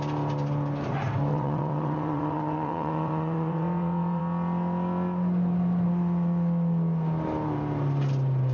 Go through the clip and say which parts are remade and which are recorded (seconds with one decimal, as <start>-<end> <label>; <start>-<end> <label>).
0.0-1.3 recorded; 1.3-4.2 remade; 4.2-8.5 recorded